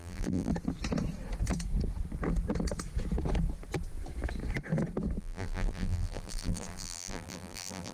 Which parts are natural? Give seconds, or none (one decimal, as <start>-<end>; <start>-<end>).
0.5-5.2